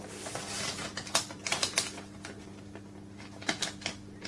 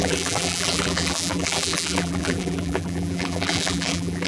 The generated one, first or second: second